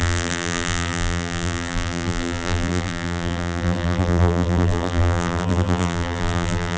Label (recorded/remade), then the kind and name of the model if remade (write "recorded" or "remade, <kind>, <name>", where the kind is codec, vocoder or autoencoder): remade, vocoder, BigVGAN v2